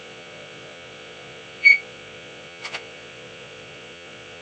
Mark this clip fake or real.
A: fake